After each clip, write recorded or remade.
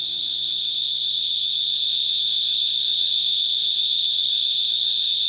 remade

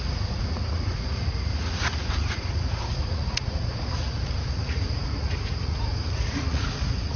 remade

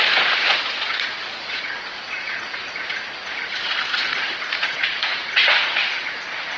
remade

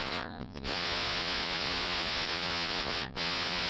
remade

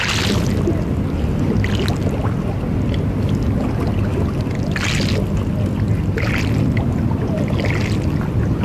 recorded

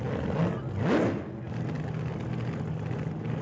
recorded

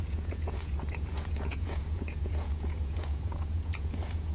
remade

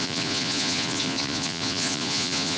remade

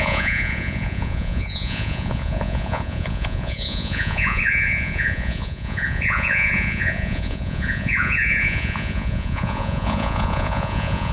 remade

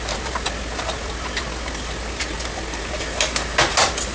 recorded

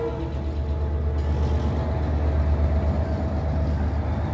recorded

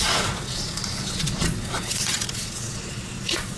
remade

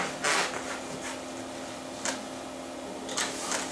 recorded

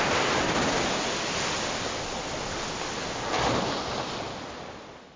recorded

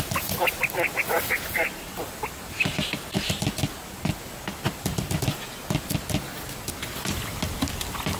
recorded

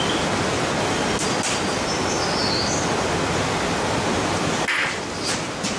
recorded